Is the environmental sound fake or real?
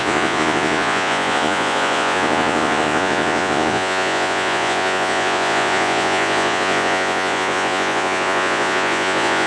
fake